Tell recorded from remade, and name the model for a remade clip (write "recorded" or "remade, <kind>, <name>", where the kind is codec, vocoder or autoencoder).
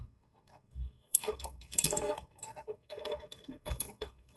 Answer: remade, codec, SNAC